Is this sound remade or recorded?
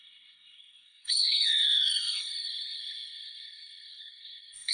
remade